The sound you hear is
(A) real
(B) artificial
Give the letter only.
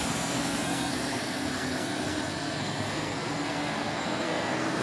B